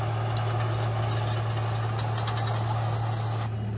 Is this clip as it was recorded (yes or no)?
yes